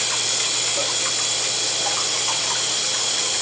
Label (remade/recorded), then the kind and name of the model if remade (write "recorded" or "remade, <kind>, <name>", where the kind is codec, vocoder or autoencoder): recorded